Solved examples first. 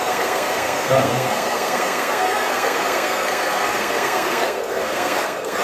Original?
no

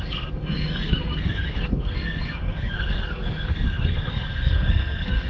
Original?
no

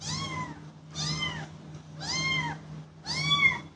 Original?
yes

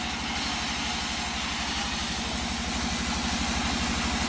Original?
yes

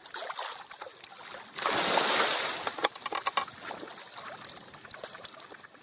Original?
yes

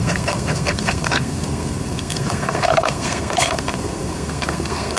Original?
no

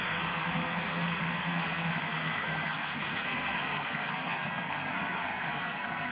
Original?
no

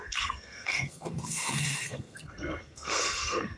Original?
no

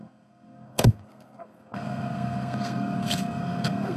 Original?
no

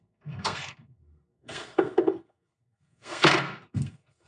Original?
no